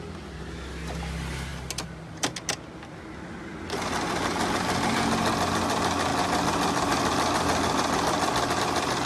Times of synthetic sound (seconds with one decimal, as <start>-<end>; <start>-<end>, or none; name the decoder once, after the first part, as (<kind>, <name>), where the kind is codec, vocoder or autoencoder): none